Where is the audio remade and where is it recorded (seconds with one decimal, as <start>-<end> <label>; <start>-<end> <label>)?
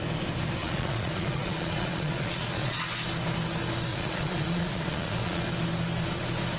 0.0-0.6 recorded; 0.6-2.9 remade; 2.9-3.9 recorded; 3.9-5.4 remade; 5.4-6.6 recorded